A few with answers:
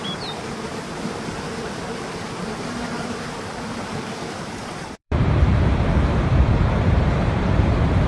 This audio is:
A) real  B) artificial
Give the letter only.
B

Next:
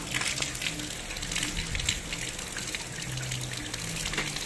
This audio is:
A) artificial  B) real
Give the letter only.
B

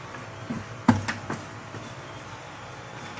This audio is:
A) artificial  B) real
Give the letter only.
B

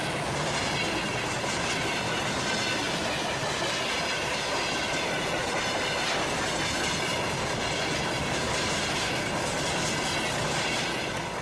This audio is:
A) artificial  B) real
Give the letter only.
B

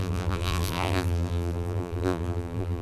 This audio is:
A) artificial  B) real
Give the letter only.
A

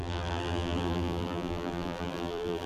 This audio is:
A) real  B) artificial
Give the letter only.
B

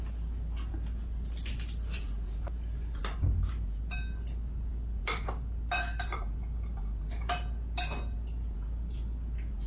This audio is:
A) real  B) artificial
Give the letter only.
A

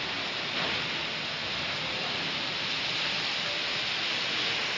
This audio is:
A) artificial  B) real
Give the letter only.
B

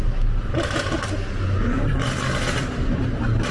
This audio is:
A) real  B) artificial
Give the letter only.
A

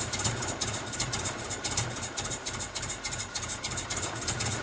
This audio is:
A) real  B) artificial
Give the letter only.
B